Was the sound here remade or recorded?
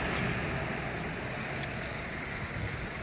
recorded